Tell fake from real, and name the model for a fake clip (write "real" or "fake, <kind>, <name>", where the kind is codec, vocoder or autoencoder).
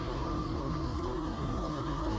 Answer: fake, codec, SNAC